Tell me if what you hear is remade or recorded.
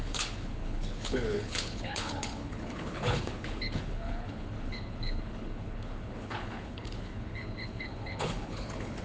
remade